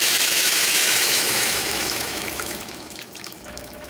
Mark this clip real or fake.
fake